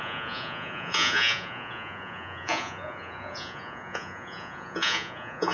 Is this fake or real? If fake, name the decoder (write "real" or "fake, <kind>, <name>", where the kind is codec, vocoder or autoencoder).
fake, vocoder, Vocos